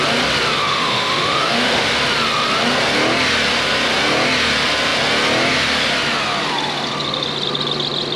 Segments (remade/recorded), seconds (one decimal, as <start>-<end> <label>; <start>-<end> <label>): 0.0-0.7 recorded; 0.7-1.9 remade; 1.9-8.2 recorded